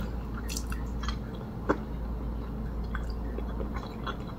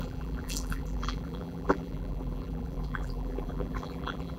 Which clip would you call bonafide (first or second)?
first